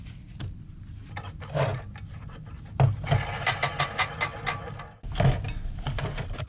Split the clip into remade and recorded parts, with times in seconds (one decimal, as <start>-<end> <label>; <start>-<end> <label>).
0.0-6.5 recorded